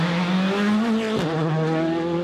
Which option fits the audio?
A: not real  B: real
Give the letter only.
B